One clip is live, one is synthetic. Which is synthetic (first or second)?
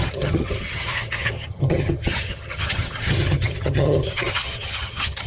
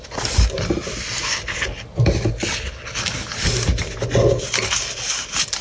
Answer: first